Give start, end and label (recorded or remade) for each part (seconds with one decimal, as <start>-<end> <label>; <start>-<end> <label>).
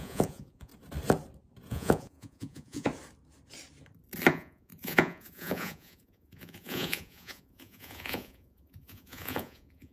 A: 0.0-0.7 remade; 0.7-1.7 recorded; 1.7-2.9 remade; 2.9-4.3 recorded; 4.3-9.9 remade